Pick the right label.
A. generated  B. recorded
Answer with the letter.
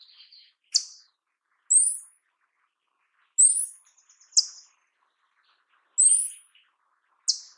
B